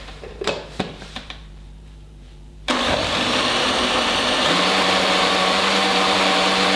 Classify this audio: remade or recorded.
remade